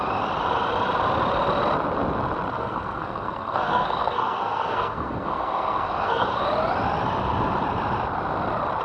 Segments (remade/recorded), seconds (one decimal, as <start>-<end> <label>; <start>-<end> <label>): 0.0-2.5 recorded; 2.5-6.4 remade; 6.4-8.8 recorded